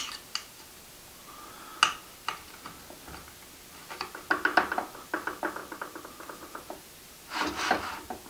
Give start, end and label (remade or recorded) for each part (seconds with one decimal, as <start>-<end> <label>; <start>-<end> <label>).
0.0-8.3 recorded